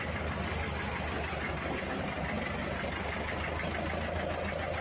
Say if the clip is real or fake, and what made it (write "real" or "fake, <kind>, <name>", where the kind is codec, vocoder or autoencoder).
real